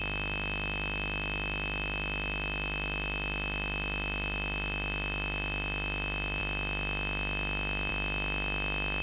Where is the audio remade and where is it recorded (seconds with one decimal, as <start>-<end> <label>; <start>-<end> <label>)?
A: 0.0-9.0 recorded